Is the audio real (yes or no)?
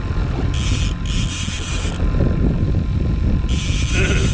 yes